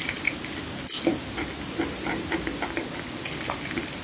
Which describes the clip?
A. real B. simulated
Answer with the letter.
A